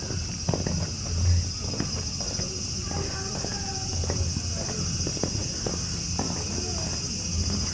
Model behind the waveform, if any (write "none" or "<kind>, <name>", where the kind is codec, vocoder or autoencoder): none